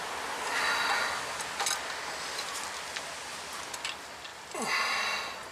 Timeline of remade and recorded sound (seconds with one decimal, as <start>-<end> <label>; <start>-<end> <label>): 0.0-5.5 recorded